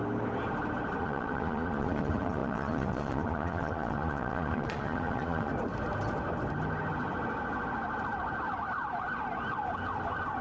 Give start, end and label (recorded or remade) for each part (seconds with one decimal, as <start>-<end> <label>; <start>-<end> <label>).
0.0-1.0 recorded; 1.0-5.5 remade; 5.5-10.4 recorded